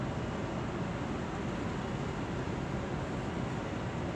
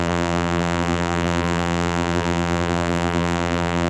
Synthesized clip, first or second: second